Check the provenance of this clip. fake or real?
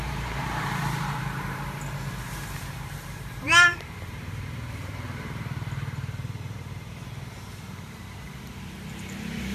fake